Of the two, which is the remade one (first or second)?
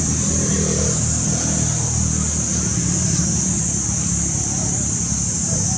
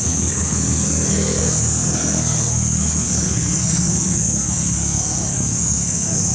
second